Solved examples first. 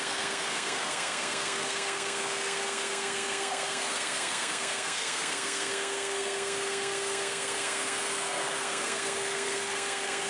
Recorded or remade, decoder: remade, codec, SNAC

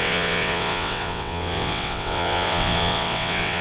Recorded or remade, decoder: remade, vocoder, WaveNeXt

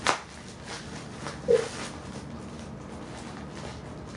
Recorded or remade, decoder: recorded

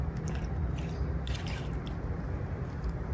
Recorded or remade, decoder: recorded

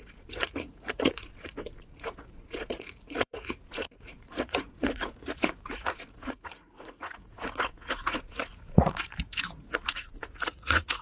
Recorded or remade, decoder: remade, vocoder, Vocos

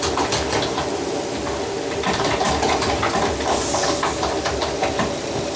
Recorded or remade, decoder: recorded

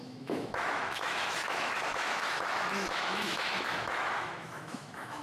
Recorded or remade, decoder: remade, autoencoder, DAC-VAE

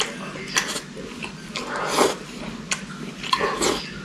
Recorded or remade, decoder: recorded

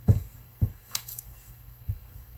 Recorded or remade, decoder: remade, codec, SNAC